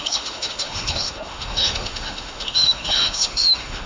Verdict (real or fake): fake